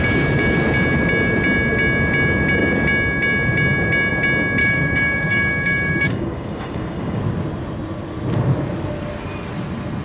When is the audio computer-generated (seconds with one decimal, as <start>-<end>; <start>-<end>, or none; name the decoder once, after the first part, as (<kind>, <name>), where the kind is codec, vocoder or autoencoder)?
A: 4.6-7.2 (codec, DAC)